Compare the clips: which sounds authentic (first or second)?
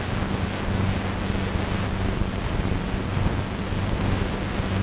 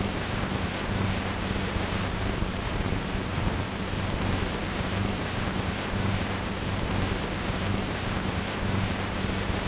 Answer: first